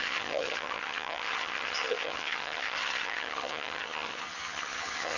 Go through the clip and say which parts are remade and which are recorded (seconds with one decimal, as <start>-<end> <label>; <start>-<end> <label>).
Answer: 0.0-5.2 remade